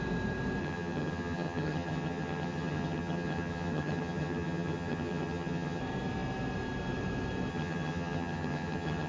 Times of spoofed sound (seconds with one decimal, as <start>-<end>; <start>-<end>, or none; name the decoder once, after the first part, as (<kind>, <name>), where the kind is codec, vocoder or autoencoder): 0.6-5.8 (vocoder, HiFi-GAN); 7.5-9.1